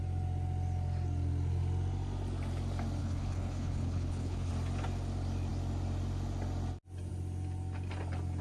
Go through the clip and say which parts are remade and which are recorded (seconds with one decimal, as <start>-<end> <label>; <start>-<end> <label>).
0.0-3.0 recorded; 3.0-4.5 remade; 4.5-8.4 recorded